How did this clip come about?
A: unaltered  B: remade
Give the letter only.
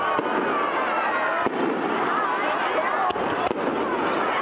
A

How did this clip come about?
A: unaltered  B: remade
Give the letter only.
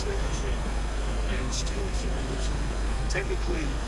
B